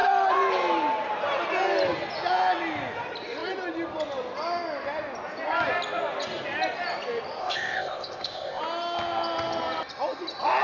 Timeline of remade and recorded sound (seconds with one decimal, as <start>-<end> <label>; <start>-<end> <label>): 0.0-7.4 recorded; 7.4-8.6 remade; 8.6-10.6 recorded